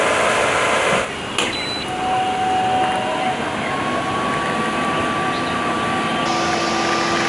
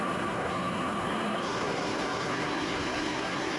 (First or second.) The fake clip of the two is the second